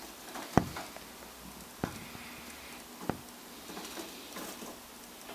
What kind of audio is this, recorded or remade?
recorded